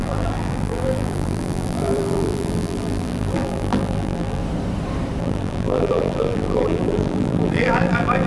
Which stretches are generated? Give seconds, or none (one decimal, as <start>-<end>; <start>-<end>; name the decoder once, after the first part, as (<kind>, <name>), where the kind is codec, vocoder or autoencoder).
0.0-4.4 (vocoder, BigVGAN v2); 5.2-8.3